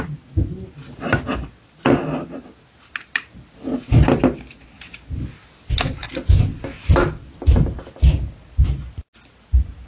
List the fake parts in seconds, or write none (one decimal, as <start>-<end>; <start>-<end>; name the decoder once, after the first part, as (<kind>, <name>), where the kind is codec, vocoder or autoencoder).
none